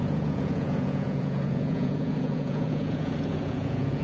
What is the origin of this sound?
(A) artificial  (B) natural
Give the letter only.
A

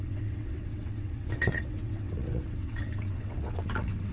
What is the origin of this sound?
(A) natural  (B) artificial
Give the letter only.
B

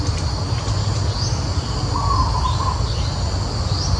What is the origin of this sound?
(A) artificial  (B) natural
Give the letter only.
B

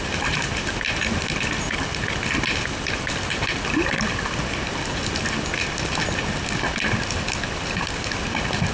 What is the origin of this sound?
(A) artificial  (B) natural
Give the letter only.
B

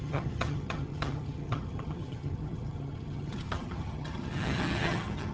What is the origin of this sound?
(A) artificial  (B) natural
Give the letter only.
A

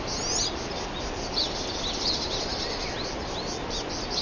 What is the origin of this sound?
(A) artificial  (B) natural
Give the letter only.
B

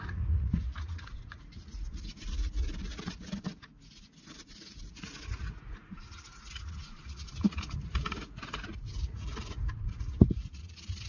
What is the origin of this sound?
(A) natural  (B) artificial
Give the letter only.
B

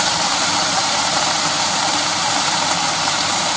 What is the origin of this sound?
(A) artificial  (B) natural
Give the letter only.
A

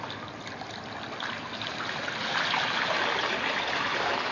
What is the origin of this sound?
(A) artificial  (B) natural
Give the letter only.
B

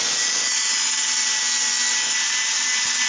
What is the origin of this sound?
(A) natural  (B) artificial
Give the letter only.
A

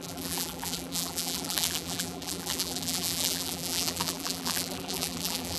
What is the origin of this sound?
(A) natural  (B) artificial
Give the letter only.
B